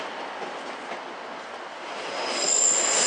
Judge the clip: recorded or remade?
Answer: recorded